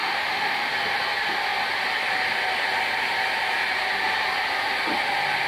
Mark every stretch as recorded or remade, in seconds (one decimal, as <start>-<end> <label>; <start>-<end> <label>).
0.0-0.7 remade; 0.7-5.5 recorded